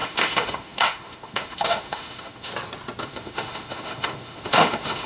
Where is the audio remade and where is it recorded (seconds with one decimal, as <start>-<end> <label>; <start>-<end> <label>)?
0.0-2.5 remade; 2.5-3.0 recorded; 3.0-5.1 remade